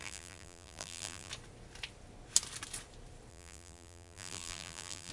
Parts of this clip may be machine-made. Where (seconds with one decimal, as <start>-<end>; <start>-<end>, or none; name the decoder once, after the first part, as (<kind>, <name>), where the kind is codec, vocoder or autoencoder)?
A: 0.0-1.3 (vocoder, BigVGAN v2); 3.3-5.1

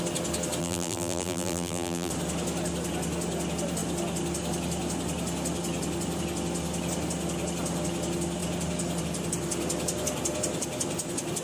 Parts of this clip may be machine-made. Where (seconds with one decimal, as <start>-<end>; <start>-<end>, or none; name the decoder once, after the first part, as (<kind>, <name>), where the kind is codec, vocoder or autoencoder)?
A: 0.6-2.1 (vocoder, BigVGAN v2)

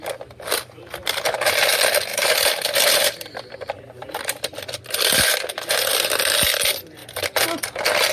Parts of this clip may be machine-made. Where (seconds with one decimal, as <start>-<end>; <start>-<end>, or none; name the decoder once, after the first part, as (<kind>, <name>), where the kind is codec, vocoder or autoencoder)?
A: 1.0-1.7 (vocoder, BigVGAN v2); 2.1-3.3

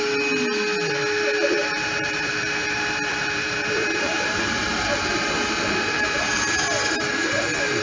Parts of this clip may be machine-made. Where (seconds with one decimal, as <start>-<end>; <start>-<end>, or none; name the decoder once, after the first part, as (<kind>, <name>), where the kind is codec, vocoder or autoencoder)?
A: 1.6-6.3 (vocoder, BigVGAN v2)

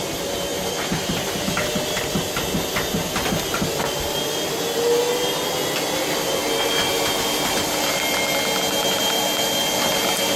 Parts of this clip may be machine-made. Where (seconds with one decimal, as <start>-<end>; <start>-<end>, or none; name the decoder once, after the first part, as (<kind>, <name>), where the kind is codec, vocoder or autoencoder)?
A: none

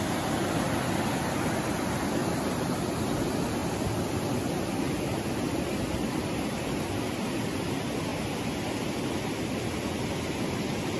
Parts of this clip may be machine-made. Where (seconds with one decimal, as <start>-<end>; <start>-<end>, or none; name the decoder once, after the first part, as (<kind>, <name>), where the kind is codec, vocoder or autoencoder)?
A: none